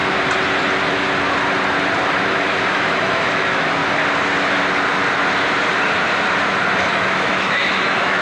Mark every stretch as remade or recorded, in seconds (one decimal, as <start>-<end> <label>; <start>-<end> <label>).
0.0-2.7 recorded; 2.7-3.8 remade; 3.8-6.9 recorded; 6.9-8.2 remade